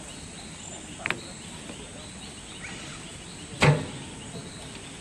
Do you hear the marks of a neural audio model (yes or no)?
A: no